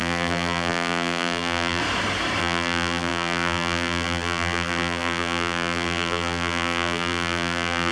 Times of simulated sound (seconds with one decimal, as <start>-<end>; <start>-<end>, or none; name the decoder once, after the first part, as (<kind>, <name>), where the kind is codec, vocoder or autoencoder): 0.0-1.8 (vocoder, BigVGAN v2); 2.4-7.9